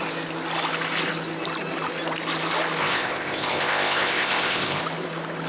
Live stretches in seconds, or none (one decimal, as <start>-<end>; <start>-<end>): 0.0-2.8; 4.8-5.5